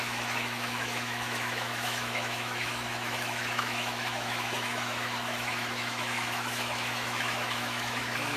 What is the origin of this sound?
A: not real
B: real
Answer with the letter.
A